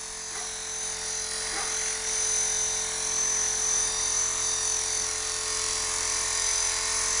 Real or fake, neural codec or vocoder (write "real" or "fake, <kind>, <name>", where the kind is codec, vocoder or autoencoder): real